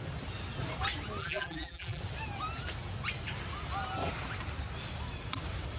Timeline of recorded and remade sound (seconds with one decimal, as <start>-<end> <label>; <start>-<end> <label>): 0.0-1.2 recorded; 1.2-2.0 remade; 2.0-5.8 recorded